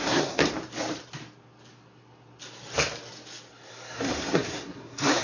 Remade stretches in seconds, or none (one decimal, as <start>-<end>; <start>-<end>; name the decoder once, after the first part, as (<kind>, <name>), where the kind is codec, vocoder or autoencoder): 0.0-0.4 (codec, SNAC); 3.5-5.2